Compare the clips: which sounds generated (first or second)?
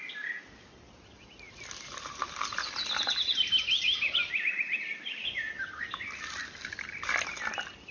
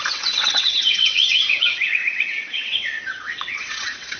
second